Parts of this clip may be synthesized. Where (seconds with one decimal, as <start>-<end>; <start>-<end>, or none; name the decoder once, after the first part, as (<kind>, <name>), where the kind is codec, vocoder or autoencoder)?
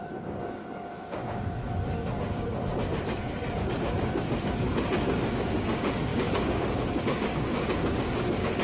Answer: 0.0-1.6 (codec, DAC); 2.2-2.6; 3.6-8.6